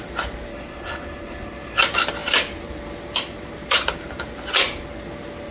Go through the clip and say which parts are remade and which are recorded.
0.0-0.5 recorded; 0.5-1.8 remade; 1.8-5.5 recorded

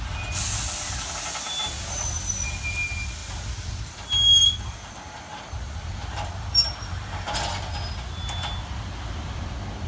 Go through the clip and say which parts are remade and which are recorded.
0.0-9.9 recorded